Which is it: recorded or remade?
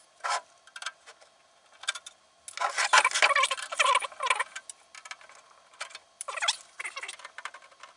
recorded